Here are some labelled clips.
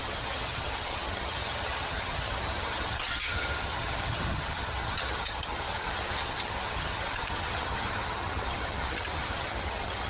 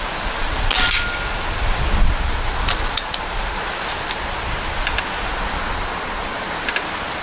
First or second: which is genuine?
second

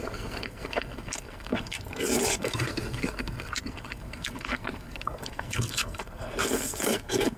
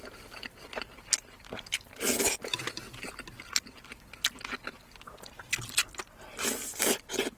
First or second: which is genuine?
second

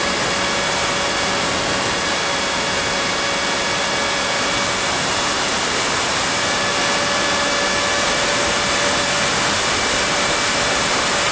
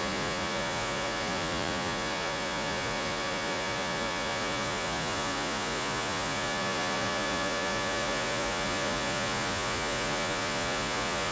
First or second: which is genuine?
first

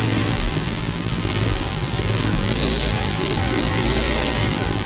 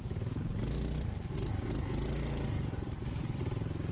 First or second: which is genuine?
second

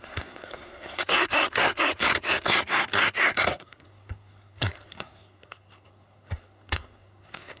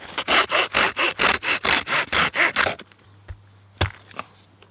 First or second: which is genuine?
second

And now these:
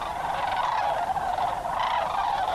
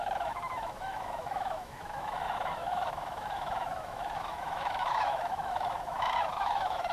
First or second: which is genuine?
first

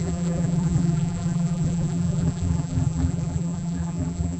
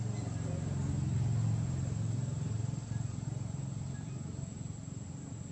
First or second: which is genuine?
second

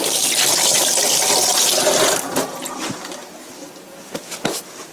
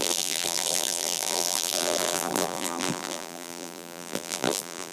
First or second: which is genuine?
first